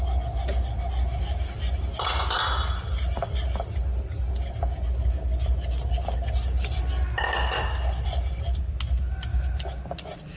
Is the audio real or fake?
real